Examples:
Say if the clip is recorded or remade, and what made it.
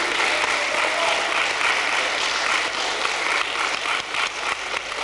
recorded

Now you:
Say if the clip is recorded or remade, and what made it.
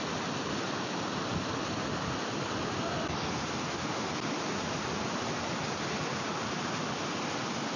recorded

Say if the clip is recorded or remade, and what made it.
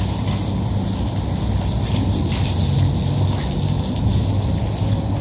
recorded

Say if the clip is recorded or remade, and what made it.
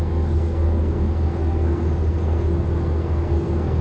remade, codec, SNAC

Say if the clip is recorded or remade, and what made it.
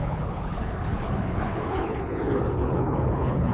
remade, codec, HILCodec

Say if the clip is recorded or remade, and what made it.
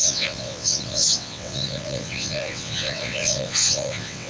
remade, vocoder, WaveNeXt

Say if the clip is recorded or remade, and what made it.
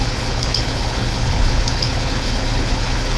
remade, codec, HILCodec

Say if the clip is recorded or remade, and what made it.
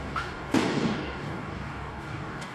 remade, codec, DAC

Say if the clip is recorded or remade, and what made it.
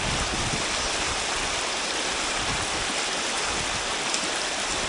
remade, vocoder, BigVGAN v2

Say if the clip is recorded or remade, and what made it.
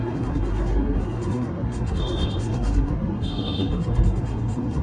remade, codec, SNAC